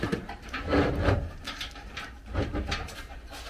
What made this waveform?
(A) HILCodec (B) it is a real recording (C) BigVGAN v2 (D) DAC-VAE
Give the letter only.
C